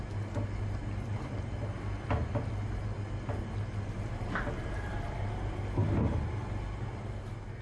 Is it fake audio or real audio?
real